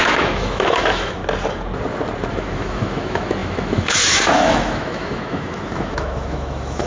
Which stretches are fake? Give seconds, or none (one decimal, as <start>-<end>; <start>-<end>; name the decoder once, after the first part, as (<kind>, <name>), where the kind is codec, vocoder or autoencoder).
0.0-1.2 (autoencoder, DAC-VAE); 2.3-6.9